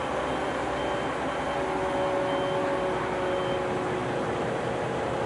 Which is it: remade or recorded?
recorded